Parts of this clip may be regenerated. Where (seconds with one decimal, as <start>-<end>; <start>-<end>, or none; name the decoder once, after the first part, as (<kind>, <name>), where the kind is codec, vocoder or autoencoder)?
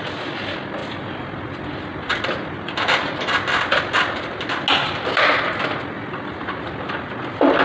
none